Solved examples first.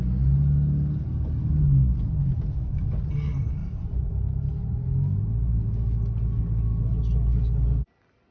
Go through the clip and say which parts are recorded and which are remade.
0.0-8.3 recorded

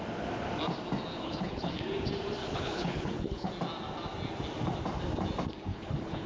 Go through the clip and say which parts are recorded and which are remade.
0.0-1.1 recorded; 1.1-1.7 remade; 1.7-2.4 recorded; 2.4-3.5 remade; 3.5-5.7 recorded; 5.7-6.3 remade

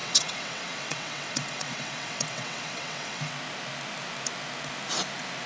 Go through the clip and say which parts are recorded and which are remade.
0.0-3.3 remade; 3.3-5.5 recorded

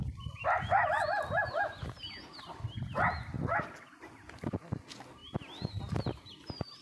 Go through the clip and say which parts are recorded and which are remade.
0.0-6.8 recorded

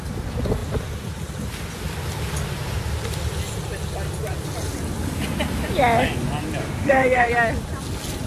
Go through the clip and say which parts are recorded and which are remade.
0.0-6.6 recorded; 6.6-7.3 remade; 7.3-8.3 recorded

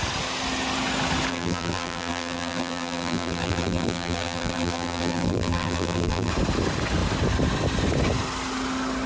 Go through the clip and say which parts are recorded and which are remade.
0.0-1.3 recorded; 1.3-6.3 remade; 6.3-9.1 recorded

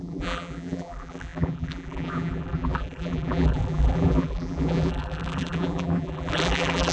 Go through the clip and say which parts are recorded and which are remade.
0.0-6.9 remade

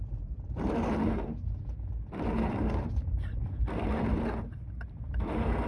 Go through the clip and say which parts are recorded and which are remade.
0.0-5.7 remade